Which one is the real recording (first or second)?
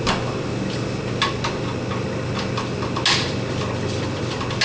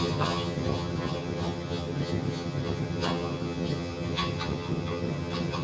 first